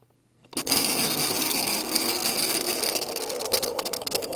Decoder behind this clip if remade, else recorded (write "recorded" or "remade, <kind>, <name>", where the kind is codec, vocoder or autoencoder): remade, codec, SNAC